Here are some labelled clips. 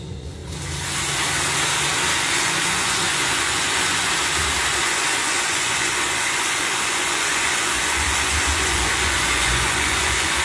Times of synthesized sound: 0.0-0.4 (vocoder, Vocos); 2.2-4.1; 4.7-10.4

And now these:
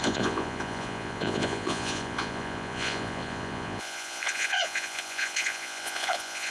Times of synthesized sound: 0.0-6.5 (vocoder, Vocos)

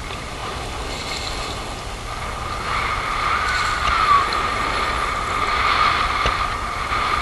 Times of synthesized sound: 0.0-0.4 (vocoder, BigVGAN v2); 2.8-4.5; 5.5-7.2

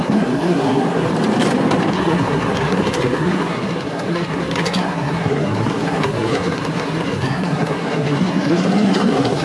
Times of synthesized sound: 0.0-1.1 (codec, SNAC); 1.9-9.4

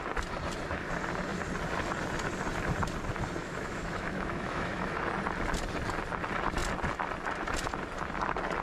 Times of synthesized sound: 3.4-5.0 (autoencoder, DAC-VAE)

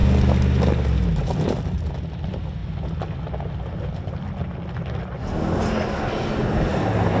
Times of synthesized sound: none

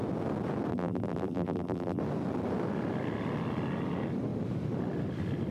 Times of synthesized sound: 0.7-2.0 (vocoder, BigVGAN v2)